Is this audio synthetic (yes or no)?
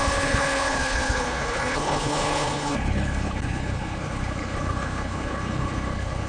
yes